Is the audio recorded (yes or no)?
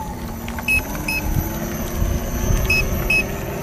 yes